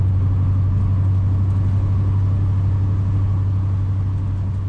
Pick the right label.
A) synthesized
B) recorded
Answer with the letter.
B